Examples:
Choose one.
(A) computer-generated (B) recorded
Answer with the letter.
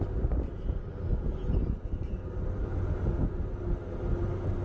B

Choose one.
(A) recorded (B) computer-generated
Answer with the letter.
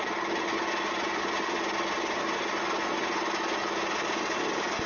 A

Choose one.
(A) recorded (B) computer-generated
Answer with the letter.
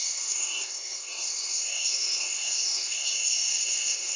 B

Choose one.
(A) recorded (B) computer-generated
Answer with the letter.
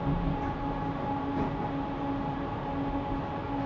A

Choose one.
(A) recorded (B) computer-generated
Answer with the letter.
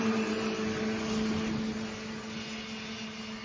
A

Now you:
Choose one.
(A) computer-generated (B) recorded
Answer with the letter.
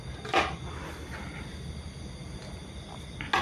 B